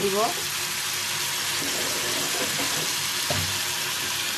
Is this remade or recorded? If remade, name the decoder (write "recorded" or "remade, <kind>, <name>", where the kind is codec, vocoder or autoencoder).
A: recorded